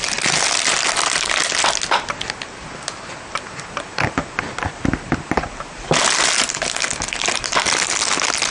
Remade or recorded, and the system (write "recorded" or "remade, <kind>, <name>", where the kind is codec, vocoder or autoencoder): recorded